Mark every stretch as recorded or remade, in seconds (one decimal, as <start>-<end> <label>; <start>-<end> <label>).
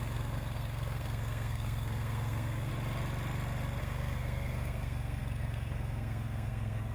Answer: 0.0-2.7 remade; 2.7-3.8 recorded; 3.8-6.9 remade